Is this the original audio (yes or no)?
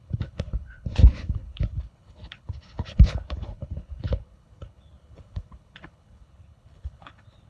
no